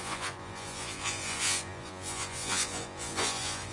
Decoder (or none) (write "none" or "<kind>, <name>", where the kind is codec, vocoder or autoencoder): vocoder, Vocos